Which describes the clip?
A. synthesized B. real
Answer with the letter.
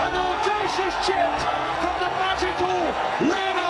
A